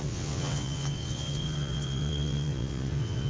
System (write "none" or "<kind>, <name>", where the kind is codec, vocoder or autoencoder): vocoder, WaveNeXt